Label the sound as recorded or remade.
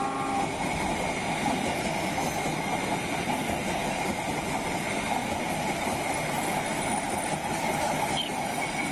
recorded